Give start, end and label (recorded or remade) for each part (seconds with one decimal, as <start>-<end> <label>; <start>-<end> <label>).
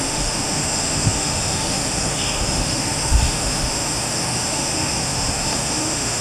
0.0-6.2 remade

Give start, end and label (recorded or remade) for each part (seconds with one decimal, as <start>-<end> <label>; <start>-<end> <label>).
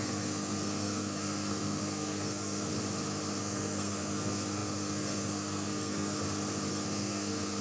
0.0-2.7 remade; 2.7-3.4 recorded; 3.4-6.2 remade; 6.2-6.7 recorded; 6.7-7.6 remade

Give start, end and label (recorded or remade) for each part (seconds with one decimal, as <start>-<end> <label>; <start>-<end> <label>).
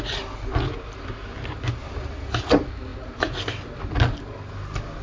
0.0-5.0 remade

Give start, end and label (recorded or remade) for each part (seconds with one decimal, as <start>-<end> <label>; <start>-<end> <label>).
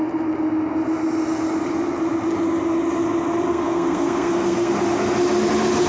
0.0-3.5 recorded; 3.5-4.7 remade; 4.7-5.9 recorded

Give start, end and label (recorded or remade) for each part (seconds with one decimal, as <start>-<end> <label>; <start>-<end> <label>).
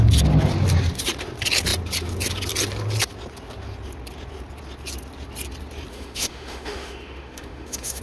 0.0-5.9 recorded; 5.9-8.0 remade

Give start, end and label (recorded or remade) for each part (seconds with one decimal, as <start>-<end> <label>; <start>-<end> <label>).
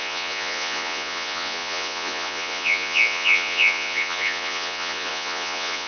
0.0-5.9 remade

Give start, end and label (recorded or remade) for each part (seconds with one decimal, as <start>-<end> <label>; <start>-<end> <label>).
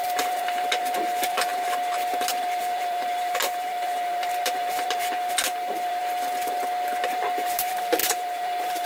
0.0-6.0 remade; 6.0-7.1 recorded; 7.1-8.9 remade